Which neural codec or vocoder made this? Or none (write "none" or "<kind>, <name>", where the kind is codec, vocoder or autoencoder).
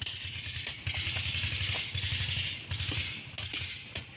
none